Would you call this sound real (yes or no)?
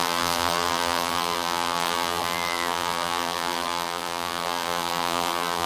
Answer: no